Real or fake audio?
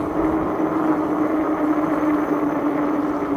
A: real